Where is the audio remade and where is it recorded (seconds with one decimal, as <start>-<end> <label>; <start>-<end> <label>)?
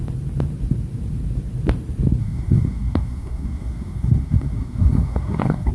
0.0-2.2 recorded; 2.2-5.7 remade